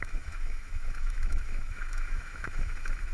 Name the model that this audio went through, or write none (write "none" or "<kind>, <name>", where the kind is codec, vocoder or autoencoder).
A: autoencoder, DAC-VAE